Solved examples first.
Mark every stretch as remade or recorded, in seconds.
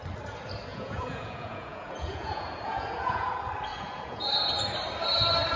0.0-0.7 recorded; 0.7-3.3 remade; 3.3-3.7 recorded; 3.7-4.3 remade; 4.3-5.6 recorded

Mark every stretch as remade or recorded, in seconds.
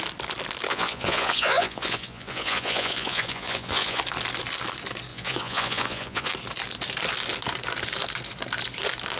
0.0-0.7 recorded; 0.7-4.0 remade; 4.0-5.1 recorded; 5.1-6.3 remade; 6.3-9.2 recorded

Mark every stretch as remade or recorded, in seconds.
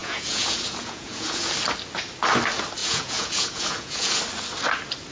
0.0-1.5 remade; 1.5-2.8 recorded; 2.8-4.2 remade; 4.2-5.1 recorded